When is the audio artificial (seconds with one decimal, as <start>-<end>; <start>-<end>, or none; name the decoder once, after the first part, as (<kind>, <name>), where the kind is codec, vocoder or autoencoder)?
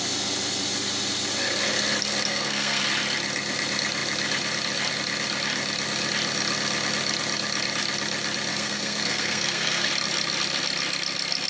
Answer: 2.3-2.8 (codec, SNAC); 8.5-9.9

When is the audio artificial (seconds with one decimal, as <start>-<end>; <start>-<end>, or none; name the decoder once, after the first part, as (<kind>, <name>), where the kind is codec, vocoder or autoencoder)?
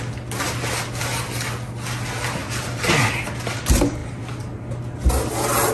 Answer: none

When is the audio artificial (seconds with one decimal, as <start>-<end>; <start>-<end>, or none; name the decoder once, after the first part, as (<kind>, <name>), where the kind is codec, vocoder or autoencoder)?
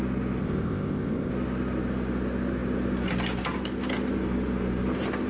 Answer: 0.4-1.3 (codec, ZipCodec)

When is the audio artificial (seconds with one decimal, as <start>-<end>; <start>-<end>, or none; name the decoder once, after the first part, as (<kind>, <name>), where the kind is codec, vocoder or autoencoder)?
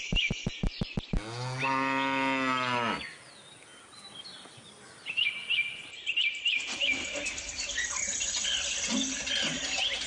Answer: 0.0-0.5 (vocoder, BigVGAN v2); 3.2-10.1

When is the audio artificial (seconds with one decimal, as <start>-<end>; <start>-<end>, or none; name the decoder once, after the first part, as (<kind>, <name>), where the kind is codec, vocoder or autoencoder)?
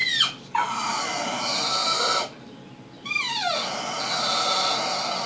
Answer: none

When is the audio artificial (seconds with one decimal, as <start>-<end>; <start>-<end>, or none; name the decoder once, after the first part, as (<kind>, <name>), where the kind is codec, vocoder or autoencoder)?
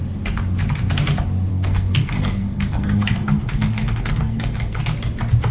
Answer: 1.5-4.8 (codec, SNAC)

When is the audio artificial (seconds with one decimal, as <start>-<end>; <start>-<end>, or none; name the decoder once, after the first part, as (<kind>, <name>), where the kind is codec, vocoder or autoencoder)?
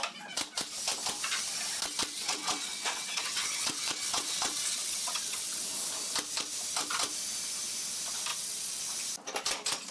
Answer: 2.0-5.9 (vocoder, WaveNeXt); 8.3-8.8